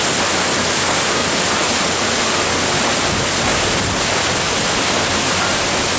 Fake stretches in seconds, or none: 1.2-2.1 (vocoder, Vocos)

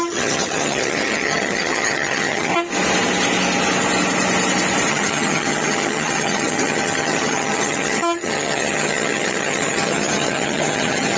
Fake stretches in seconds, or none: 0.0-2.5 (vocoder, HiFi-GAN); 4.9-11.2

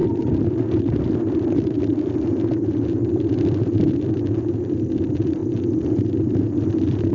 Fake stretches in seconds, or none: 0.0-5.4 (vocoder, BigVGAN v2); 6.1-7.1

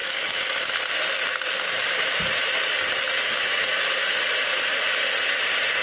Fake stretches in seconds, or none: 0.0-0.6 (autoencoder, DAC-VAE)

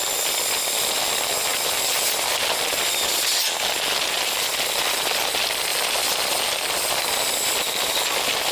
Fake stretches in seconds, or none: none

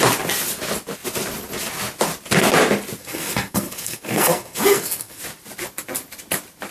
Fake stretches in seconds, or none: 3.0-5.2 (codec, SNAC)

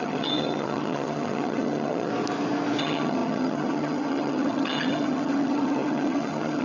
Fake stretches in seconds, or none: 0.0-2.1 (vocoder, HiFi-GAN); 2.8-6.6

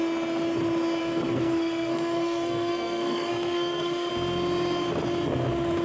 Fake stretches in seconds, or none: 1.0-4.1 (codec, SNAC)